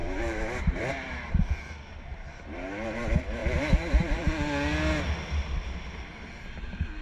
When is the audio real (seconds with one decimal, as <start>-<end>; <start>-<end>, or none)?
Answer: 1.3-2.1; 3.0-3.4; 4.2-7.0